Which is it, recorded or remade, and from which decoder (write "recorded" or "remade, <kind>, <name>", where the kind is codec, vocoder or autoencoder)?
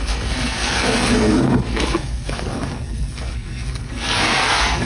remade, codec, SNAC